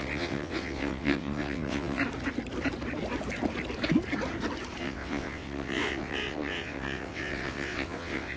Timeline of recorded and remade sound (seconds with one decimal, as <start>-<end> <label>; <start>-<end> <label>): 0.0-2.0 remade; 2.0-4.8 recorded; 4.8-8.4 remade